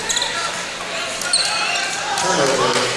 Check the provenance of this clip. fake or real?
real